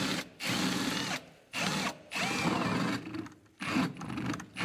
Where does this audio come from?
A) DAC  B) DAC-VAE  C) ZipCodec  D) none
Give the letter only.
D